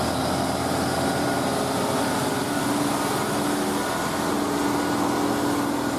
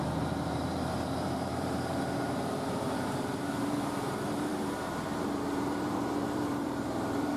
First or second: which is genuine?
first